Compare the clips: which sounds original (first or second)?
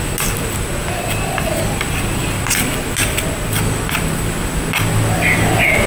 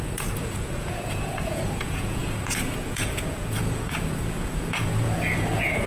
first